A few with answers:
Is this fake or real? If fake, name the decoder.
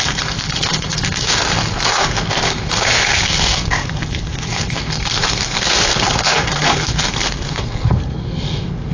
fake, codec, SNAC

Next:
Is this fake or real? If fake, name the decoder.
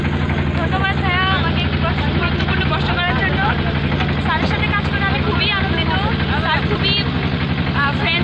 real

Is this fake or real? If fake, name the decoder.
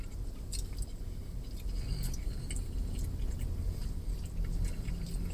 real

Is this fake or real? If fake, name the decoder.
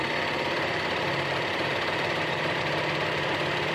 fake, vocoder, BigVGAN v2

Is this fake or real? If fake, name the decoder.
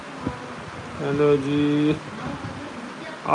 real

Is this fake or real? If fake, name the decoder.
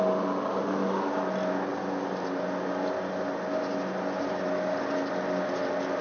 real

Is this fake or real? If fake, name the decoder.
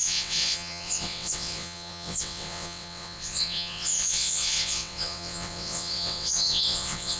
fake, vocoder, WaveNeXt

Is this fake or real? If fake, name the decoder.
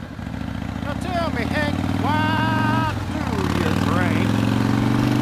real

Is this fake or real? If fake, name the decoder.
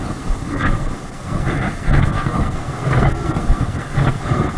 fake, codec, SNAC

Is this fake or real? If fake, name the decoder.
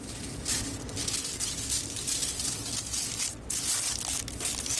real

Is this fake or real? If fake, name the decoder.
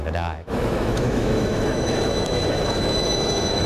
fake, autoencoder, DAC-VAE